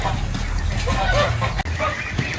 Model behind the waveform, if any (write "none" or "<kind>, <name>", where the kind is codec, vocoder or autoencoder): none